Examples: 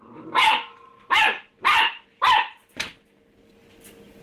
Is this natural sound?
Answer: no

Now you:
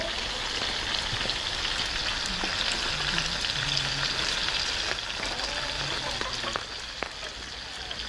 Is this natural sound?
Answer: yes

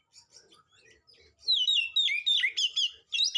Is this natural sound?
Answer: yes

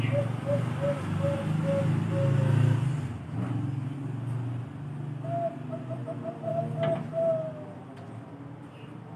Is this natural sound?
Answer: yes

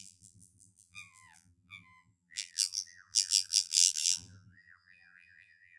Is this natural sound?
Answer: no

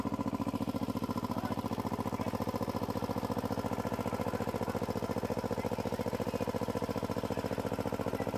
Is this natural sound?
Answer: yes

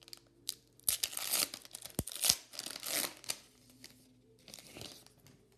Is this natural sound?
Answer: yes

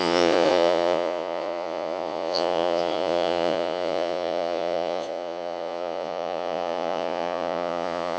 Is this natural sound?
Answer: no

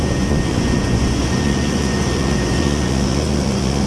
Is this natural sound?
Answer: no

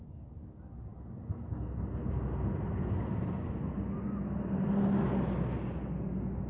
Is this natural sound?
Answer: yes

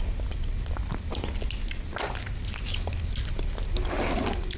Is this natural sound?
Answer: yes